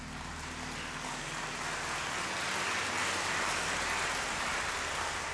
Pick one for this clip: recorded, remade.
recorded